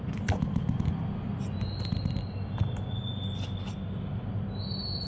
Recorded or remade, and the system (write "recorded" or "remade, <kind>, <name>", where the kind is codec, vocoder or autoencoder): recorded